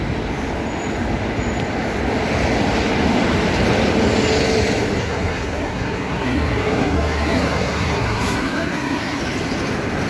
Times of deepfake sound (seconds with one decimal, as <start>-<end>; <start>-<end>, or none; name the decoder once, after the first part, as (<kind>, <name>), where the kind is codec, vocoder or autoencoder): 5.0-9.2 (codec, SNAC)